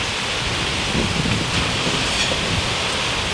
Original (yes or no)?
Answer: yes